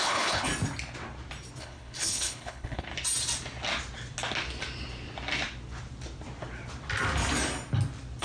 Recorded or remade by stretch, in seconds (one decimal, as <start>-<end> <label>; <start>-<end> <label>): 0.0-0.5 remade; 0.5-1.6 recorded; 1.6-2.9 remade; 2.9-8.2 recorded